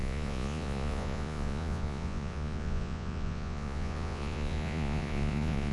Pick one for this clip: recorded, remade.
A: remade